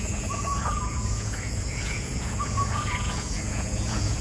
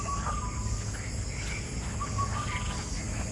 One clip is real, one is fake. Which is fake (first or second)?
first